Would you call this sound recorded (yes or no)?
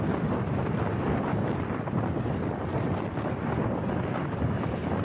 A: yes